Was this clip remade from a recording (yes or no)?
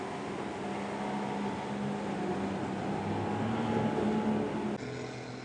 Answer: no